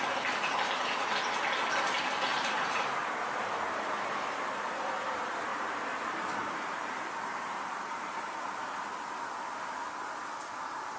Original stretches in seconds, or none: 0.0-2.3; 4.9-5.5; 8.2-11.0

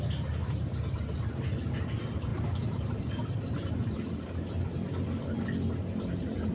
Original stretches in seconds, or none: 0.0-2.3